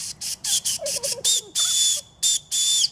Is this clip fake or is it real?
real